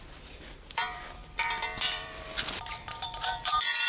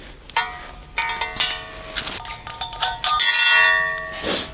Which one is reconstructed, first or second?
first